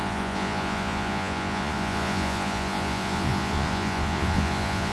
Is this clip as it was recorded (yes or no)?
no